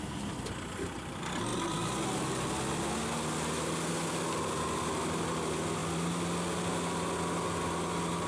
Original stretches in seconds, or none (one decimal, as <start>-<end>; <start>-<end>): 0.0-8.3